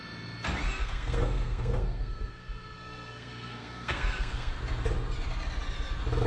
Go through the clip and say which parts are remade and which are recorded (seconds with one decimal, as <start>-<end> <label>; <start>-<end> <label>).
0.0-0.8 recorded; 0.8-4.6 remade; 4.6-6.3 recorded